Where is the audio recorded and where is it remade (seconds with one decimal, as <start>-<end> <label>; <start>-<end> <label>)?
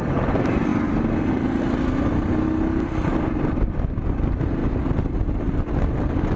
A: 0.0-6.4 recorded